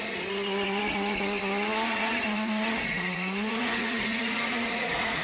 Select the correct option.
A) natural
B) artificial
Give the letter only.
B